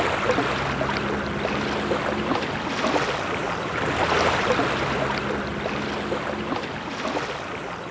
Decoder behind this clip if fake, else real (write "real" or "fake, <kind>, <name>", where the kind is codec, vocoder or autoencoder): real